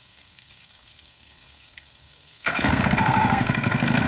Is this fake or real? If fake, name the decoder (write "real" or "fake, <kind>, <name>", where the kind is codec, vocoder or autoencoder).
fake, codec, SNAC